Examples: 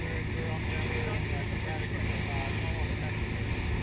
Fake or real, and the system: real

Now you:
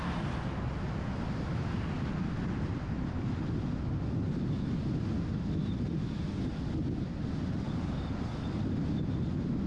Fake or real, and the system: real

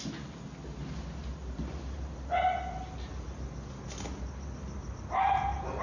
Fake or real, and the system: real